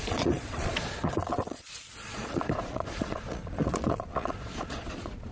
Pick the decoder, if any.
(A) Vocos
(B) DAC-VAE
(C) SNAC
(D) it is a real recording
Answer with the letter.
A